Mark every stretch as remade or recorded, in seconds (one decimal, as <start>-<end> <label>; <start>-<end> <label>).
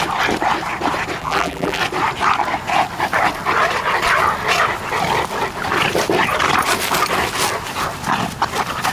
0.0-1.2 recorded; 1.2-1.8 remade; 1.8-8.9 recorded